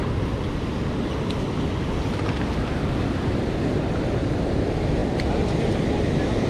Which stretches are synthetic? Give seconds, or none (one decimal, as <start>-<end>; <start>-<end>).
none